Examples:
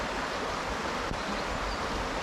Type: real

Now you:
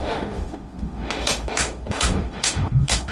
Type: fake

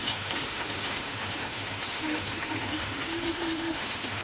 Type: fake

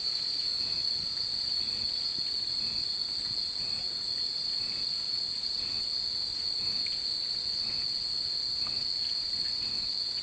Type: real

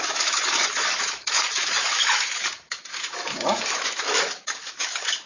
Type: fake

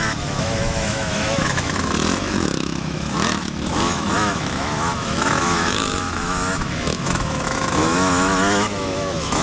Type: fake